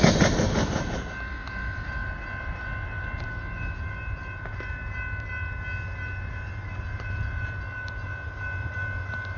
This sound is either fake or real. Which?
real